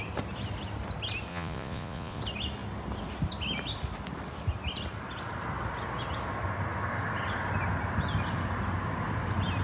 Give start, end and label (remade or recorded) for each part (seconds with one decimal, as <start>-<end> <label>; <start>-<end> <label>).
0.0-1.3 recorded; 1.3-2.2 remade; 2.2-9.6 recorded